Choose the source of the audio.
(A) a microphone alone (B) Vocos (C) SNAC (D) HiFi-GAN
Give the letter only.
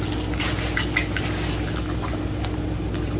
A